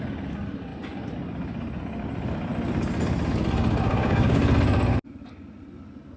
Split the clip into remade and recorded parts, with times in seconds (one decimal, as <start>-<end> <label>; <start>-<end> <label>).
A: 0.0-3.9 recorded; 3.9-4.4 remade; 4.4-6.2 recorded

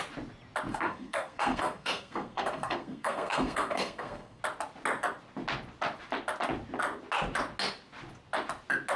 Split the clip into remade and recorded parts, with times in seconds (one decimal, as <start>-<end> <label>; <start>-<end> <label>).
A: 0.0-0.7 recorded; 0.7-4.4 remade; 4.4-9.0 recorded